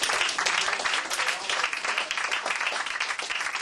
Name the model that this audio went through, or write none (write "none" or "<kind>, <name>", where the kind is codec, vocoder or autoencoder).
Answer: vocoder, BigVGAN v2